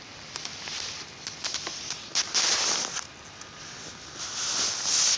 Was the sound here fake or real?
real